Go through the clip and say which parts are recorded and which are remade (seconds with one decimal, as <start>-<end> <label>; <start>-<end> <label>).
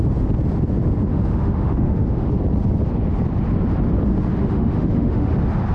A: 0.0-1.1 recorded; 1.1-2.3 remade; 2.3-4.4 recorded; 4.4-5.3 remade; 5.3-5.7 recorded